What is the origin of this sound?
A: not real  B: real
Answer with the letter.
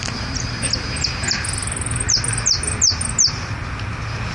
B